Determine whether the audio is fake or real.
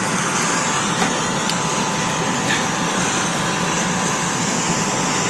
real